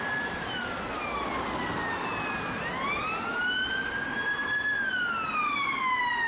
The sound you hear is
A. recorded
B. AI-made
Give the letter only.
A